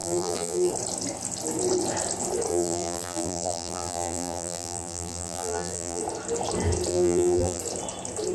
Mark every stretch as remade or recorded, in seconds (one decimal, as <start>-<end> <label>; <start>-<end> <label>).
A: 0.0-0.7 remade; 0.7-2.5 recorded; 2.5-6.0 remade; 6.0-6.9 recorded; 6.9-7.6 remade; 7.6-8.3 recorded